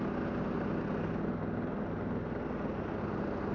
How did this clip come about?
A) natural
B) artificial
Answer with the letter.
A